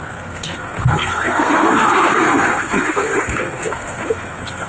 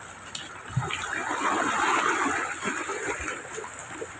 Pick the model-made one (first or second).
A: first